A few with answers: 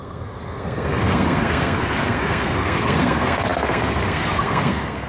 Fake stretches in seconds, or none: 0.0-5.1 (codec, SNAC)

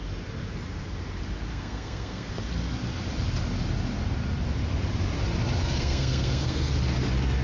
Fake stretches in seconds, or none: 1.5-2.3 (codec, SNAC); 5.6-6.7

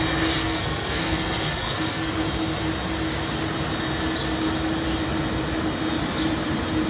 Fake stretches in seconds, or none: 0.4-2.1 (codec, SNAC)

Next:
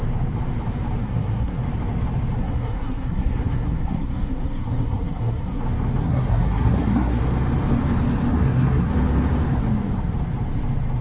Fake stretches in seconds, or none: 1.0-1.6 (codec, SNAC); 2.4-5.6; 6.0-7.2; 8.3-8.9